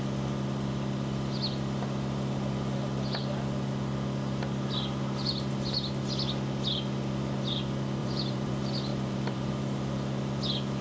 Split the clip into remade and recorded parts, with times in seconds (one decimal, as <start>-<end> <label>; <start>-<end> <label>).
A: 0.0-8.0 recorded; 8.0-8.5 remade; 8.5-8.9 recorded; 8.9-9.5 remade; 9.5-10.8 recorded